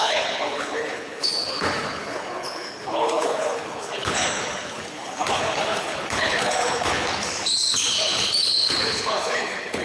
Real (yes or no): no